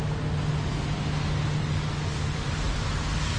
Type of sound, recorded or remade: recorded